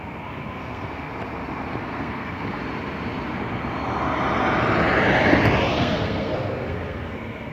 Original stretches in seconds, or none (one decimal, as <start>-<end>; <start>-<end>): 1.1-1.8; 2.6-5.7